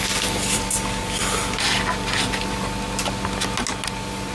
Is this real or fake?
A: real